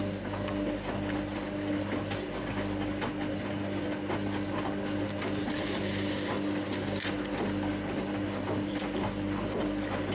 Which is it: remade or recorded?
recorded